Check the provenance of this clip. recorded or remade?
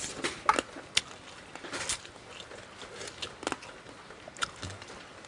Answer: recorded